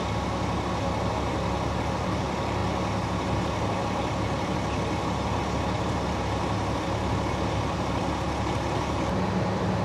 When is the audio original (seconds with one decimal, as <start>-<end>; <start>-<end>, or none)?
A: 0.0-9.8